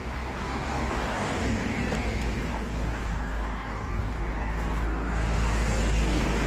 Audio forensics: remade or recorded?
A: remade